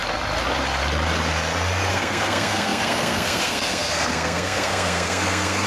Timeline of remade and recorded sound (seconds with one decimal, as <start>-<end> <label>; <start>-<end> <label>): 0.0-1.9 recorded; 1.9-5.7 remade